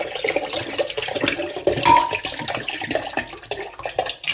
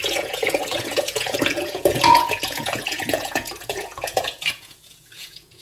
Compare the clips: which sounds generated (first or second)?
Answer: second